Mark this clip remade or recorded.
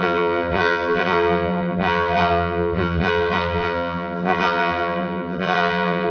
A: remade